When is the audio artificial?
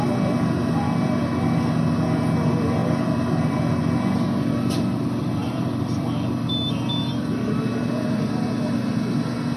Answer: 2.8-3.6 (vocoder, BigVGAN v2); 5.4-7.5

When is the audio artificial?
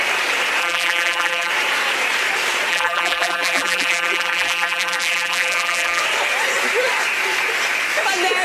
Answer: 0.6-1.5 (vocoder, BigVGAN v2); 2.7-6.0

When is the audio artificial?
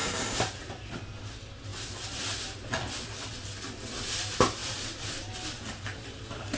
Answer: 0.0-0.7 (vocoder, BigVGAN v2); 4.6-5.1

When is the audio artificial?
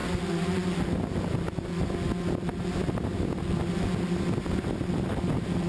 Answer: none